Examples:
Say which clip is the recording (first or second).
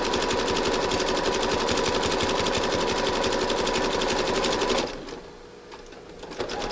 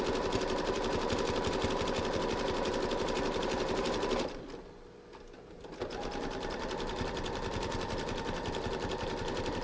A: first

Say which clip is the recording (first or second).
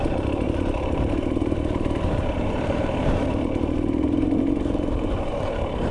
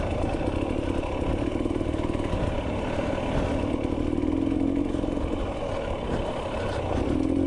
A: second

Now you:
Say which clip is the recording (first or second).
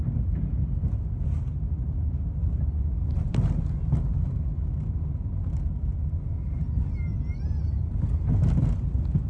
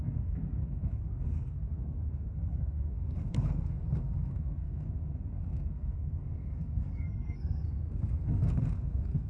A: first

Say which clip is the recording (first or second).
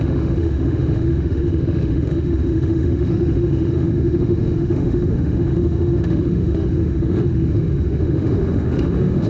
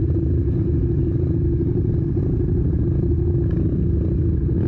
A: second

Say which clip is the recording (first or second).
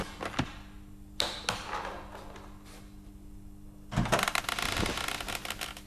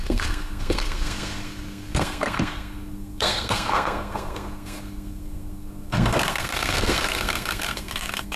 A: first